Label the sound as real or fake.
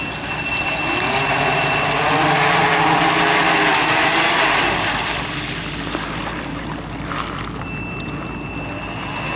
real